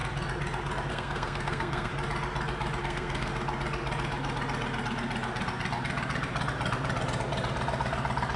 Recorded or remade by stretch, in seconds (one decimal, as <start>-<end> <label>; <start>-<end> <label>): 0.0-0.9 recorded; 0.9-1.9 remade; 1.9-2.8 recorded; 2.8-3.3 remade; 3.3-8.4 recorded